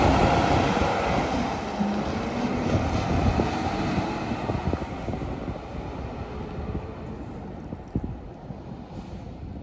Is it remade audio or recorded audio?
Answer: recorded